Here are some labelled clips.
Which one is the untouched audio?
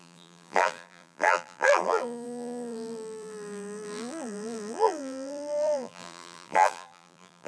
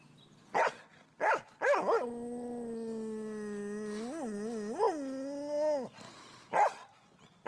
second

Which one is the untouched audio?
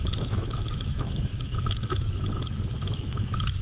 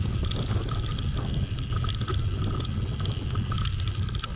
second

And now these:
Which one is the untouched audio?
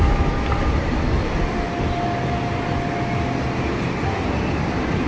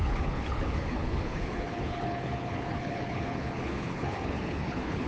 first